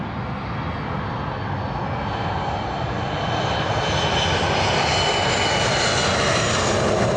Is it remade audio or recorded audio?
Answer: recorded